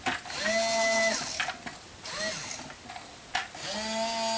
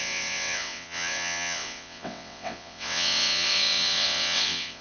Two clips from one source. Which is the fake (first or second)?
second